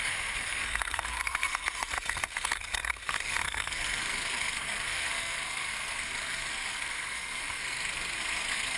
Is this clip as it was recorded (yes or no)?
no